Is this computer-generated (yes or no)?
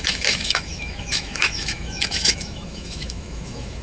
yes